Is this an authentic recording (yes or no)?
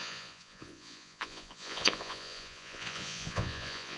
no